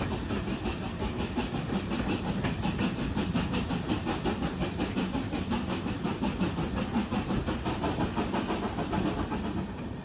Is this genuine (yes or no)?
yes